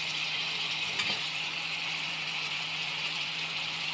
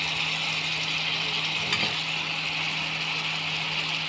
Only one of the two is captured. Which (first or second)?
second